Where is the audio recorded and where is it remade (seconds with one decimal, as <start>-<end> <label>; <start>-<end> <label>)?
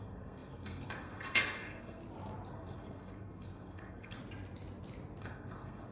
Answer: 0.0-2.0 remade; 2.0-2.5 recorded; 2.5-4.2 remade; 4.2-5.2 recorded; 5.2-5.9 remade